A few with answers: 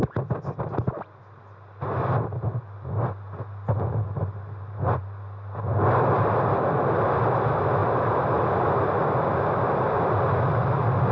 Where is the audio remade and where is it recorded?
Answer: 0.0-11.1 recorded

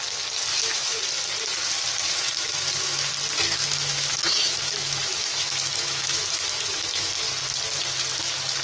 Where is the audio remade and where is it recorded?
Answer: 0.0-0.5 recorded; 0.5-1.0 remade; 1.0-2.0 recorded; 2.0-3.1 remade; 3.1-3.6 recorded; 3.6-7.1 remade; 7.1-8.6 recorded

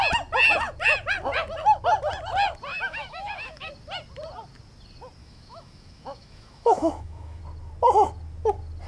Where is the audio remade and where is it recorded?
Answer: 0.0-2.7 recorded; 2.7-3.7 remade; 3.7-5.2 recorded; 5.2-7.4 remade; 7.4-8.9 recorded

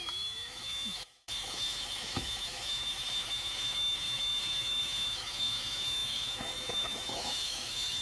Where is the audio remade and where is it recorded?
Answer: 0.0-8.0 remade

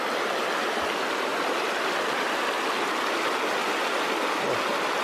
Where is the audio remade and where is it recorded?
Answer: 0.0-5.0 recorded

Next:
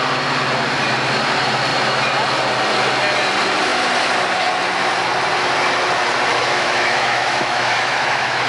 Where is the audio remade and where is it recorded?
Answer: 0.0-6.3 recorded; 6.3-8.5 remade